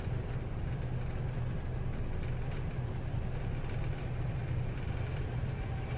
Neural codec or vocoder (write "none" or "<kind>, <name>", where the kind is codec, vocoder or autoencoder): none